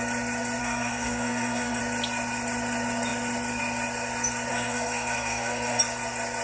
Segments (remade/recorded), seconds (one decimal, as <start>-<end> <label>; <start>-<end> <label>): 0.0-0.6 recorded; 0.6-1.8 remade; 1.8-4.5 recorded; 4.5-5.8 remade; 5.8-6.4 recorded